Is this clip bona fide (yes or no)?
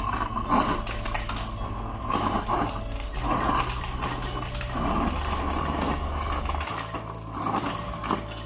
yes